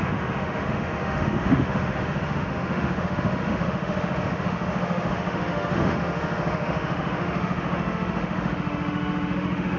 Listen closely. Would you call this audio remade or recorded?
remade